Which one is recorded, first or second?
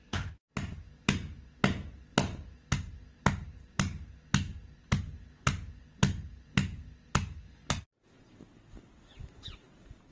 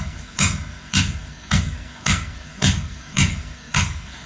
first